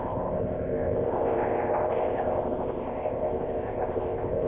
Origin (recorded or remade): remade